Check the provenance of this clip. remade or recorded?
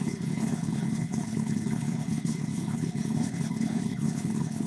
remade